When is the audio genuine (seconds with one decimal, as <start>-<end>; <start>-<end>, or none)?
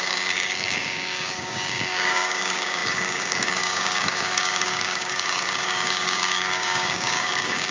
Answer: none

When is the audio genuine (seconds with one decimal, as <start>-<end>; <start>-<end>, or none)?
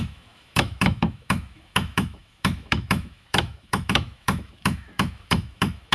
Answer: none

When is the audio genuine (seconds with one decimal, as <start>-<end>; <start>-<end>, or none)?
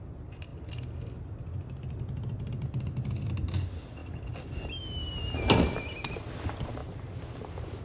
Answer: 0.0-7.8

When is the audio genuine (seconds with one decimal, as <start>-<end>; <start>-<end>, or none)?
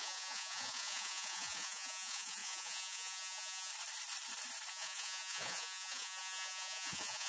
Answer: 3.7-4.7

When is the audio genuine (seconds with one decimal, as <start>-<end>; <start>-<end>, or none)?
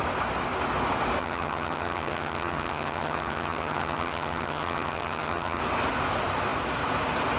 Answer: 0.0-1.2; 5.6-7.4